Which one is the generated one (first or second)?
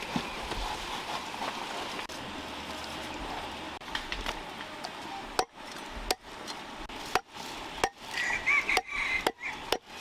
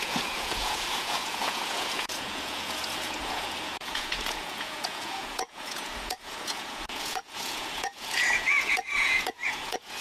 second